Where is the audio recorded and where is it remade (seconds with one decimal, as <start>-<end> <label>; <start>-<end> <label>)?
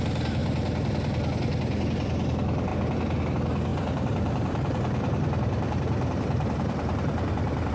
0.0-3.7 recorded; 3.7-7.7 remade